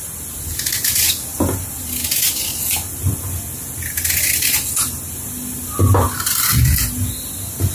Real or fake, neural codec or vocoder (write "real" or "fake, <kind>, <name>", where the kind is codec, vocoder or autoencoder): real